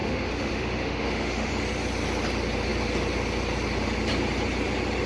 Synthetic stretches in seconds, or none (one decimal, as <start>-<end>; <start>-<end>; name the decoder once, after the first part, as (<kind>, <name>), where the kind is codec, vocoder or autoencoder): 0.0-1.5 (autoencoder, DAC-VAE)